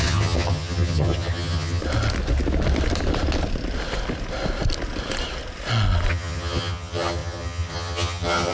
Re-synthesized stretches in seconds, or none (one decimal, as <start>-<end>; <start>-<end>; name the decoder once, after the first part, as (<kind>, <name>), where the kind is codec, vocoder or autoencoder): 0.0-1.8 (vocoder, HiFi-GAN); 6.1-8.5